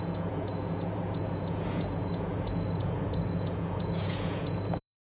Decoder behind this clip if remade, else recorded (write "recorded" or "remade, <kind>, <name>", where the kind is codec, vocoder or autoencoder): remade, vocoder, Vocos